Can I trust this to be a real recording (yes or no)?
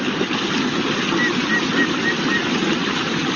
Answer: yes